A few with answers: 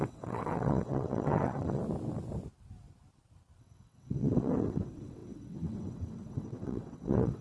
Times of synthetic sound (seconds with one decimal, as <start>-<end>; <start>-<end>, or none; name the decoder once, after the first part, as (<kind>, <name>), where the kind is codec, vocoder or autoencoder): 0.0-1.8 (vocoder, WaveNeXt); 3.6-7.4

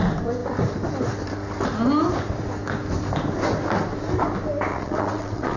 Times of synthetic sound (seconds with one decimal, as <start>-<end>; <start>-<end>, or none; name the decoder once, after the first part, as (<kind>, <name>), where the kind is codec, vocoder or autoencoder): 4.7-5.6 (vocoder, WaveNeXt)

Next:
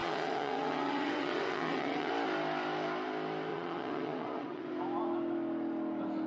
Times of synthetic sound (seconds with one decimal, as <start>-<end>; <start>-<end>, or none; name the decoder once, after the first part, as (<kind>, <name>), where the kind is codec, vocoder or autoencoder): 0.0-2.1 (vocoder, WaveNeXt); 3.5-4.7